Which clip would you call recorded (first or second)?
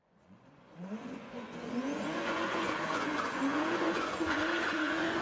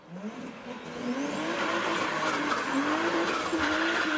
second